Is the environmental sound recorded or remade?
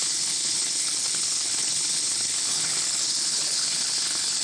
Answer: remade